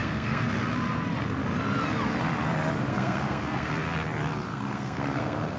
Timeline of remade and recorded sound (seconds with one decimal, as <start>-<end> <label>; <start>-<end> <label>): 0.0-0.5 remade; 0.5-2.9 recorded; 2.9-3.7 remade; 3.7-4.5 recorded; 4.5-5.6 remade